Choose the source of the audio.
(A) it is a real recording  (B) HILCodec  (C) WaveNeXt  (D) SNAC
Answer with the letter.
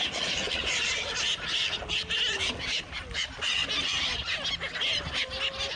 A